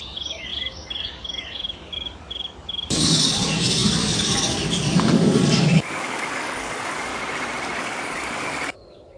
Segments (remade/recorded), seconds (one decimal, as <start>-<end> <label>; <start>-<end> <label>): 0.0-7.1 remade; 7.1-7.8 recorded; 7.8-9.2 remade